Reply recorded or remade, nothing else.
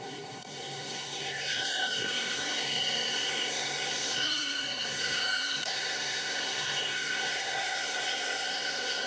remade